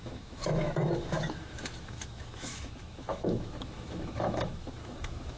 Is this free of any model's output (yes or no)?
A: no